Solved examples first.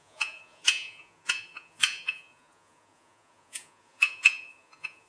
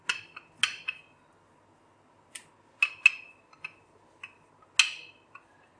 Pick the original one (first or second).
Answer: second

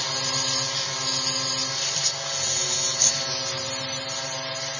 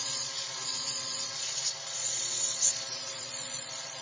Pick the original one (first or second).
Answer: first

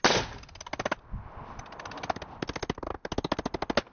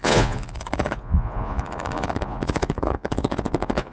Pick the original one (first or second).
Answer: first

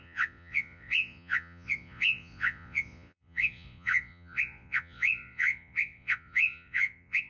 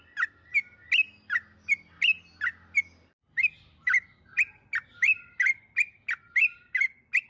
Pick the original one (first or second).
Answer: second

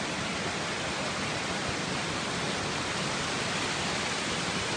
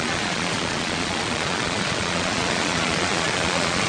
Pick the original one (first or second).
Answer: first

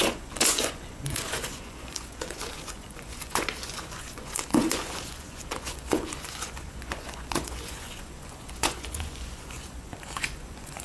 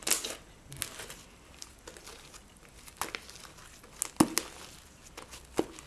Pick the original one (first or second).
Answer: second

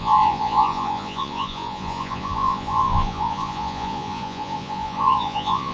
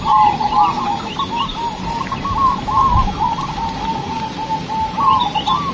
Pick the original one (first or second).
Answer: second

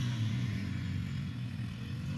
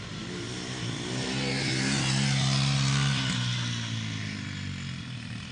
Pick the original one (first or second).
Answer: second